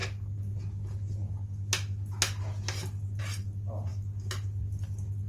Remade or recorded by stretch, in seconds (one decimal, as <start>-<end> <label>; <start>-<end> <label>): 0.0-5.3 recorded